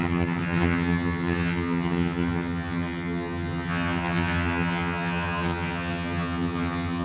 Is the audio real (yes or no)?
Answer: no